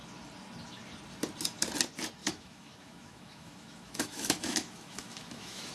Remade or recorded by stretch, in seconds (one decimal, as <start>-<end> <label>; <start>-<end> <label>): 0.0-2.2 recorded; 2.2-5.7 remade